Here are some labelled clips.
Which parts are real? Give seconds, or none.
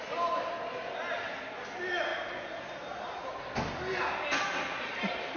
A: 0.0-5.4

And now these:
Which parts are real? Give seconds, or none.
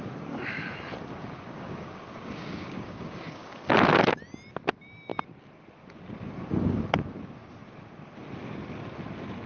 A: 0.0-1.1; 3.7-9.5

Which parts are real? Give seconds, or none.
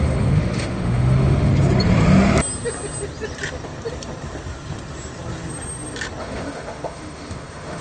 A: 1.5-6.2